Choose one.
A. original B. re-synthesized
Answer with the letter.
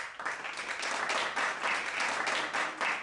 A